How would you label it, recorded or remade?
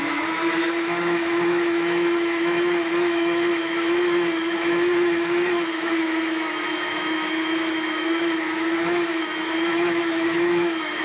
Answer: remade